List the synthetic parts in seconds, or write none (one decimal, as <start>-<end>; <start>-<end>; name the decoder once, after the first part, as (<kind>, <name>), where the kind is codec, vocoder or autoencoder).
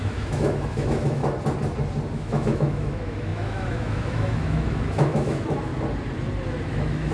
0.0-1.2 (autoencoder, DAC-VAE); 2.1-5.7; 6.6-7.1